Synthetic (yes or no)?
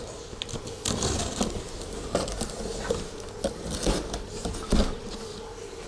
no